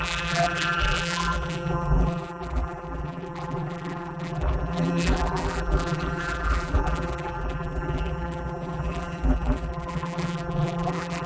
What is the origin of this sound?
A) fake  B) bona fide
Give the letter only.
A